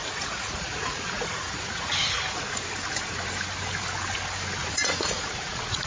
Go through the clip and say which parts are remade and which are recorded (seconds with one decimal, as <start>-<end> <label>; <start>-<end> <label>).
0.0-1.9 remade; 1.9-4.6 recorded; 4.6-5.9 remade